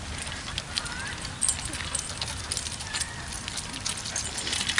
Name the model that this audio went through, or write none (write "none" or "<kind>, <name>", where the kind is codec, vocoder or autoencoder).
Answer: none